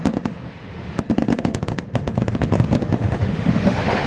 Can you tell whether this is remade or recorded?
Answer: remade